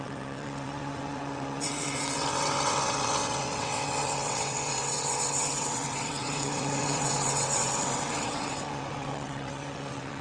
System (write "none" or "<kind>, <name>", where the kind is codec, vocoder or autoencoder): vocoder, WaveNeXt